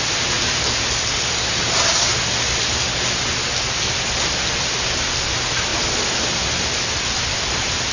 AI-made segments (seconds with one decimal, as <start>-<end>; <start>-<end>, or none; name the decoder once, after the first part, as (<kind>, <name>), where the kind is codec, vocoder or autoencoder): none